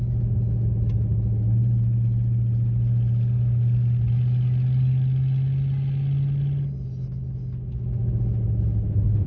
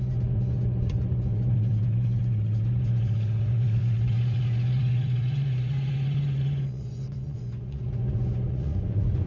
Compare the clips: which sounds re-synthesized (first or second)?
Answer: second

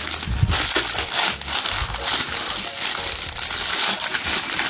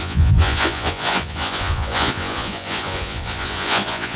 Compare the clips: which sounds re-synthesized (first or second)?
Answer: second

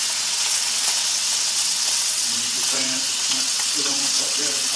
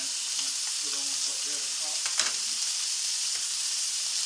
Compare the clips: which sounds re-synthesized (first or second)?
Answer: first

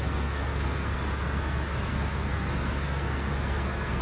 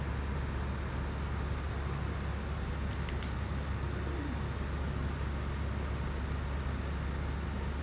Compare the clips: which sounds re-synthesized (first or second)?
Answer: first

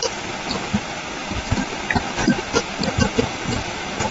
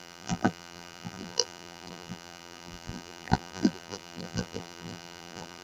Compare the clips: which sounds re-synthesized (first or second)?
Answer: second